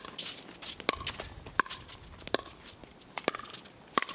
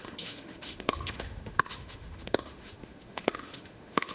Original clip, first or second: first